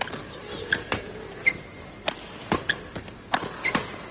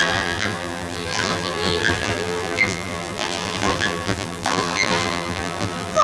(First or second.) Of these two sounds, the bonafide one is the first